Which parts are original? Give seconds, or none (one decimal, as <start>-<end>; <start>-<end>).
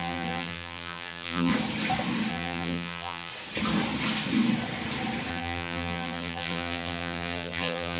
1.5-2.3; 3.3-5.3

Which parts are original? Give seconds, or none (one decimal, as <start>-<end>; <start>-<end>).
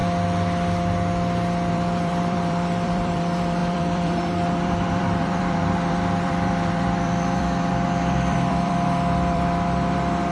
0.0-1.7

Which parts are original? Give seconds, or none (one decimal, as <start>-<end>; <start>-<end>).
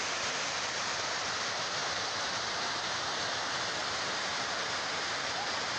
0.0-1.8; 2.8-3.8; 4.3-5.8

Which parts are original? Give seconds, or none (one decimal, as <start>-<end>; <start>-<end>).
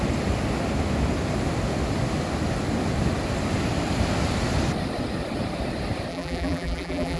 0.0-6.1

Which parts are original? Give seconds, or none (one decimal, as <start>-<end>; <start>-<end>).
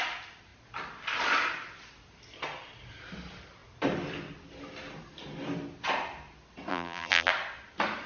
0.0-6.7; 7.3-8.1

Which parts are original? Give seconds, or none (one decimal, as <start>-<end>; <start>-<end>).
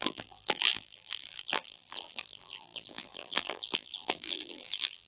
none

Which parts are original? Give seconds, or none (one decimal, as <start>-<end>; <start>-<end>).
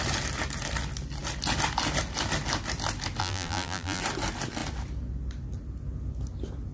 0.0-3.2; 4.0-6.7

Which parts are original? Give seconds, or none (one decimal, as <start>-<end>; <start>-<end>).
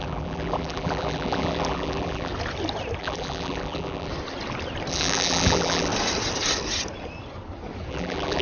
2.3-3.0; 4.1-4.9; 5.9-7.9